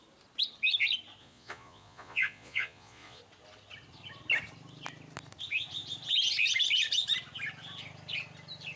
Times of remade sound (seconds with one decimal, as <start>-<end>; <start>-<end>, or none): 1.2-3.2